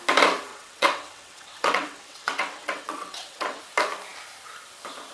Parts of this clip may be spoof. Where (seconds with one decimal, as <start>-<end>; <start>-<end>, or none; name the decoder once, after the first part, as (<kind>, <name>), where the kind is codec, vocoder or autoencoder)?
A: 0.5-3.6 (vocoder, WaveNeXt)